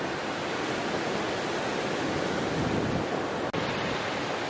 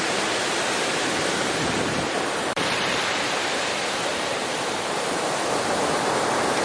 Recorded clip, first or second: first